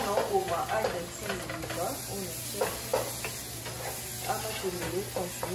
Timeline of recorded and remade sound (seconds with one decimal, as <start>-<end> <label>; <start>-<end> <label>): 0.0-0.5 recorded; 0.5-1.0 remade; 1.0-5.5 recorded